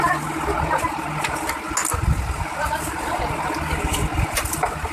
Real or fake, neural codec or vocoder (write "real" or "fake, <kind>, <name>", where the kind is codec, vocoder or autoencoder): real